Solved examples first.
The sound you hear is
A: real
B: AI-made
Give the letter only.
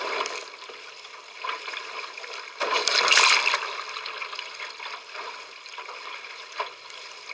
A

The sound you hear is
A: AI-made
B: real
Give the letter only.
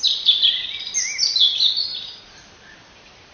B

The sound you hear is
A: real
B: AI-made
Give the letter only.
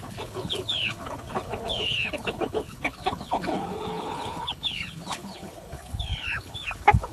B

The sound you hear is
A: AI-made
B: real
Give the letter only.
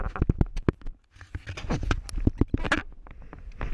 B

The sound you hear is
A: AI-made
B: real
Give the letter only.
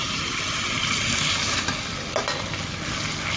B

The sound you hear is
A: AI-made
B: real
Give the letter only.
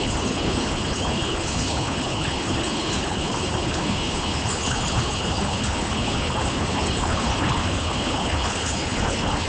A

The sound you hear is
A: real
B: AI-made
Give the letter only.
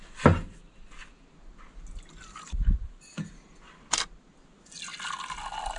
A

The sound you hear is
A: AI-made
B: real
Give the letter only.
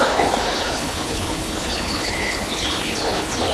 A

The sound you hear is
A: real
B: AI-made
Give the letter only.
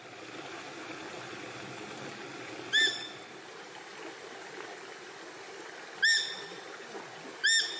A